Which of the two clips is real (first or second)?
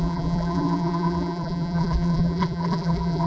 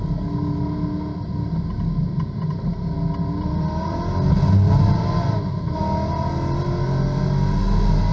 second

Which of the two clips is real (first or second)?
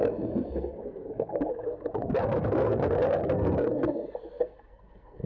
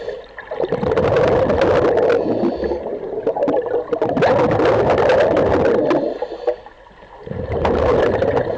second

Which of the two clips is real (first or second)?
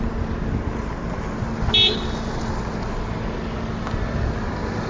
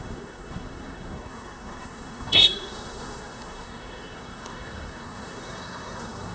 first